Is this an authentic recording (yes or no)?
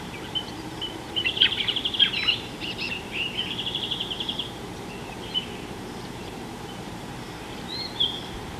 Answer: no